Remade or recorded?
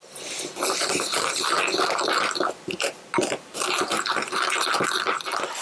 recorded